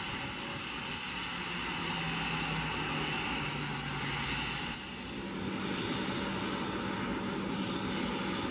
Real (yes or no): yes